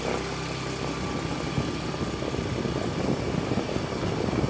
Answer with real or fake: real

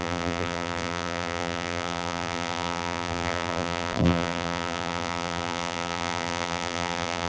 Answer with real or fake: fake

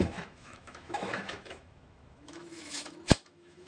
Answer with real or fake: fake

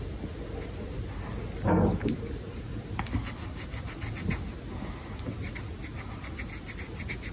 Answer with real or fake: real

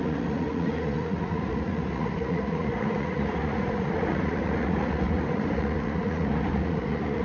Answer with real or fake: fake